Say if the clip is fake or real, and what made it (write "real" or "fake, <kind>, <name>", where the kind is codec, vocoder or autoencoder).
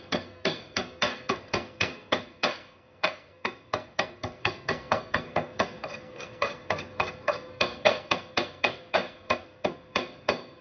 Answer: fake, codec, SNAC